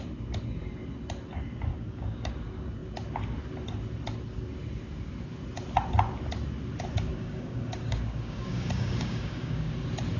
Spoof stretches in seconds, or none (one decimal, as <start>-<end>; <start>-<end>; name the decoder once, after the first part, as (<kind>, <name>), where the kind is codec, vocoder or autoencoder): 1.7-2.3 (codec, DAC); 7.1-9.7